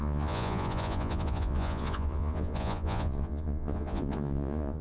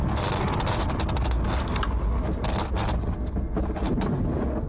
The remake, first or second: first